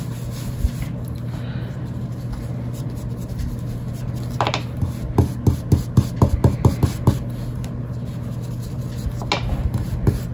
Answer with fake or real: real